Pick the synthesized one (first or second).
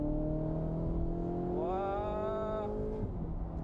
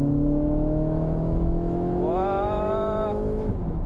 second